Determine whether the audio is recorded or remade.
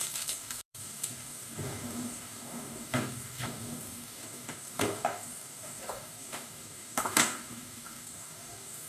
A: remade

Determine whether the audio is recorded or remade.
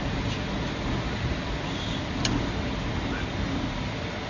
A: recorded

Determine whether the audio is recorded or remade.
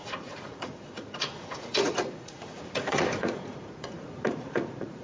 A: remade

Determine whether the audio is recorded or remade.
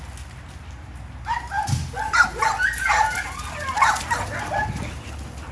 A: recorded